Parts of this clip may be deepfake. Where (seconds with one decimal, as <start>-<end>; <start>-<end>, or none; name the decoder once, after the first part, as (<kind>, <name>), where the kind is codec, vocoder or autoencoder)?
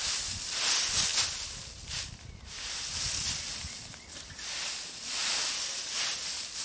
none